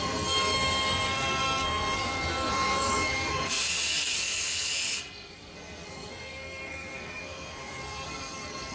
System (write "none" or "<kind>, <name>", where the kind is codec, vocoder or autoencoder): codec, SNAC